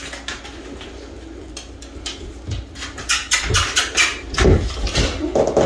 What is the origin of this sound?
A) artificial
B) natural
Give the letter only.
B